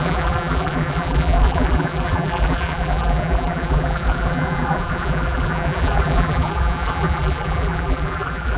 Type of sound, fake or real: fake